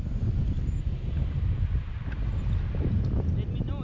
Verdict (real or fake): real